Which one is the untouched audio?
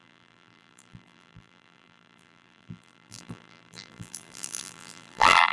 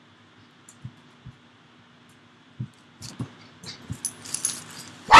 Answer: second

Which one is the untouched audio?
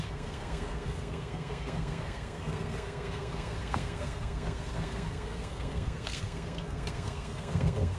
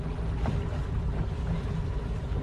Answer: second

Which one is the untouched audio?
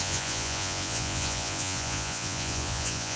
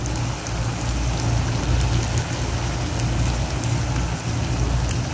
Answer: second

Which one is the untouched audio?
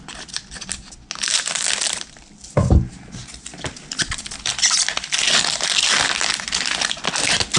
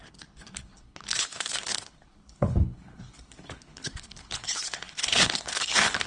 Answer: first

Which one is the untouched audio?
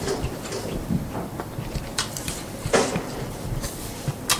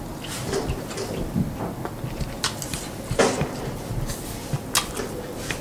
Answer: second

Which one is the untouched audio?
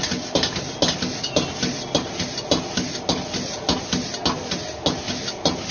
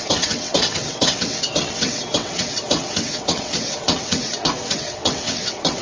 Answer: first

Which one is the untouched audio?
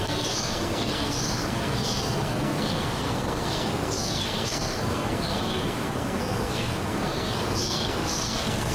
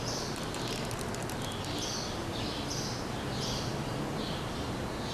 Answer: second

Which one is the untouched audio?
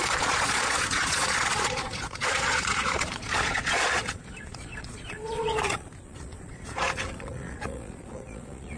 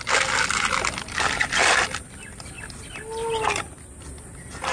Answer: second